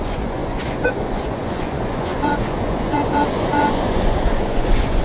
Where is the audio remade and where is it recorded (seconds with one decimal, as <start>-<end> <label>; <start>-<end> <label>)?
0.0-5.0 remade